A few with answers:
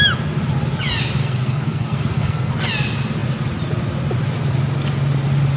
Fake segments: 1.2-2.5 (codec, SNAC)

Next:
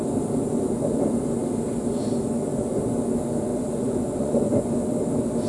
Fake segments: 3.5-4.6 (vocoder, Vocos)

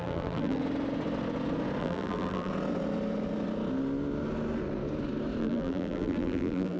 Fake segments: 0.0-0.6 (vocoder, BigVGAN v2); 1.8-2.5; 5.4-6.8